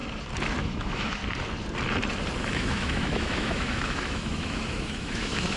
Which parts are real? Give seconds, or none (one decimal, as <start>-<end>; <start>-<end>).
0.0-0.6; 1.2-2.4